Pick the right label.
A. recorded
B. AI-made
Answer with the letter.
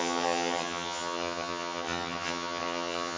B